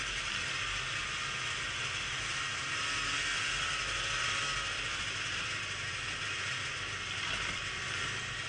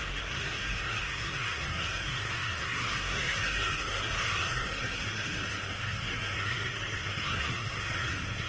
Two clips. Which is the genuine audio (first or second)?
first